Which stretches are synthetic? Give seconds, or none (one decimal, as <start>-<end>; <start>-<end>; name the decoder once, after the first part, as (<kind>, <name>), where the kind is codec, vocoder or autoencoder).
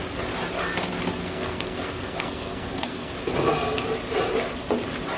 1.2-3.1 (codec, SNAC)